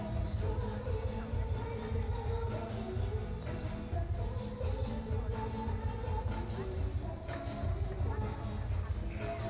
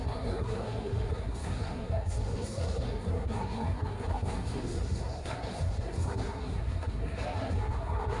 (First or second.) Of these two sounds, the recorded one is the first